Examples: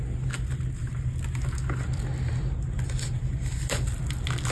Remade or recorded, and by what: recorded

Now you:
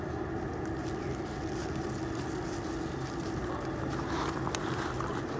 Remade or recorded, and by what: recorded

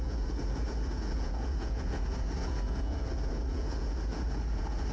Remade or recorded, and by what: remade, vocoder, Vocos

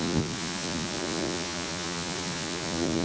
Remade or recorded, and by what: remade, vocoder, Vocos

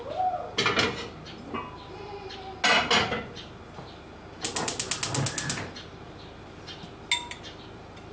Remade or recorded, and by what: recorded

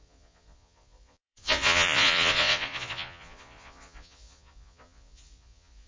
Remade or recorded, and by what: remade, vocoder, Vocos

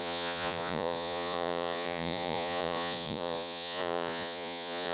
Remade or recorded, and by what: remade, vocoder, Vocos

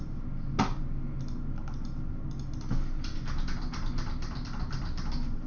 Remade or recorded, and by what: recorded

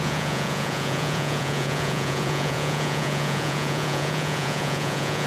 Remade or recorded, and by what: remade, vocoder, Vocos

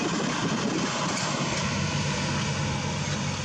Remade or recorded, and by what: recorded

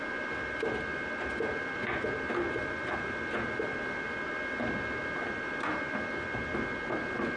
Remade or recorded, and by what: recorded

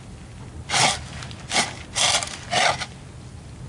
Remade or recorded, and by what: recorded